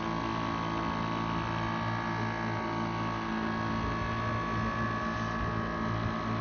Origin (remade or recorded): recorded